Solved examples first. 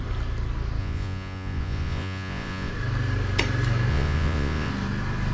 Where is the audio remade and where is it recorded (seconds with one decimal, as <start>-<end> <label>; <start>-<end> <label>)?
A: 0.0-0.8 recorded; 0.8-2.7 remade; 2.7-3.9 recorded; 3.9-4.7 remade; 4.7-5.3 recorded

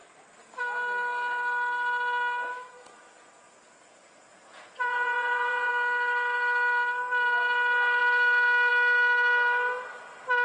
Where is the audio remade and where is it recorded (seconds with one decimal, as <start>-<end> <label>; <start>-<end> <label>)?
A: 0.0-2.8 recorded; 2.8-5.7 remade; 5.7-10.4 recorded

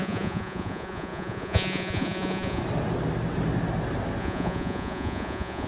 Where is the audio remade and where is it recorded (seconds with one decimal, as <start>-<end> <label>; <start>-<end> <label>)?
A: 0.0-2.6 remade; 2.6-4.2 recorded; 4.2-5.7 remade

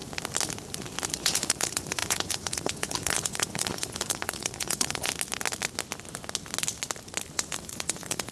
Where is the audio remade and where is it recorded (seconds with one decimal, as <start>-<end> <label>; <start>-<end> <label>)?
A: 0.0-1.1 recorded; 1.1-5.1 remade; 5.1-7.3 recorded; 7.3-8.3 remade